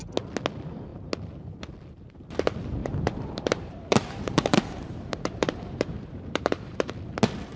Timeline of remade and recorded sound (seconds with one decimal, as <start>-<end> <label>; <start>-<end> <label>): 0.0-2.8 recorded; 2.8-6.9 remade; 6.9-7.6 recorded